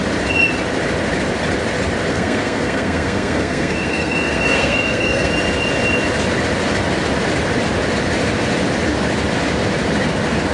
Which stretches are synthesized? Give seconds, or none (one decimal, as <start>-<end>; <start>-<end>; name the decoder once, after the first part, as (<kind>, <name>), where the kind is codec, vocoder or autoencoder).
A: 2.1-5.3 (codec, SNAC)